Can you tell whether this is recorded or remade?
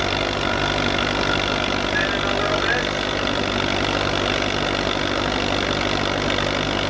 recorded